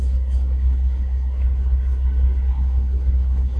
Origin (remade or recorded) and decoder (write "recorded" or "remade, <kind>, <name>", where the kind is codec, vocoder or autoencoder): remade, codec, DAC